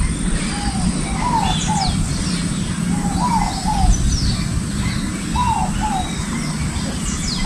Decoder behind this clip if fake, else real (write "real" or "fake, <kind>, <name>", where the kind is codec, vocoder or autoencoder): real